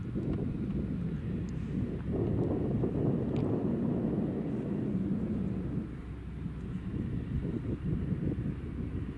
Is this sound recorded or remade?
recorded